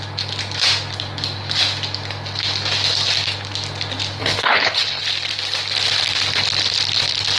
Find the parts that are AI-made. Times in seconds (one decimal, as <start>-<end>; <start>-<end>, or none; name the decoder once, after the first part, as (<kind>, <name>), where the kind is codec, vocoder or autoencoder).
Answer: 4.2-5.0 (codec, HILCodec)